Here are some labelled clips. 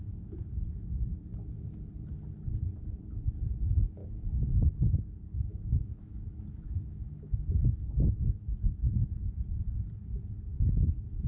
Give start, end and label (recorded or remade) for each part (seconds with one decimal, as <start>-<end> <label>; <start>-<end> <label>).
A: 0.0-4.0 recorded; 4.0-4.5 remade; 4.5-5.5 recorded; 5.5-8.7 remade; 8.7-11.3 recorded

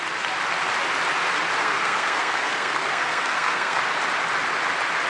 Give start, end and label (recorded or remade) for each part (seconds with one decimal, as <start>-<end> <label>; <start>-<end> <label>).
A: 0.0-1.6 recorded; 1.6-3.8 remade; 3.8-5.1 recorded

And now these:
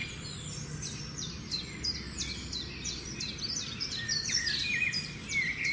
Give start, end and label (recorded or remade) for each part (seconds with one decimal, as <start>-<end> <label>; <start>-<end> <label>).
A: 0.0-1.4 remade; 1.4-5.7 recorded